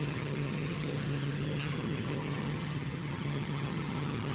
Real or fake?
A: fake